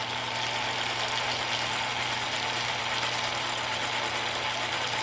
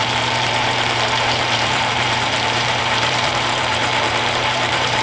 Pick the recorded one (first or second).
first